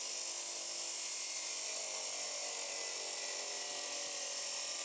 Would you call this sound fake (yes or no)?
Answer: no